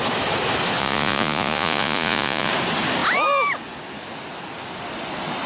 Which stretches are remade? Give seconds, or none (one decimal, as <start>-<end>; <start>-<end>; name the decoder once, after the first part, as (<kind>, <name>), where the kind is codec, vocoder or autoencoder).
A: 0.8-2.5 (vocoder, Vocos)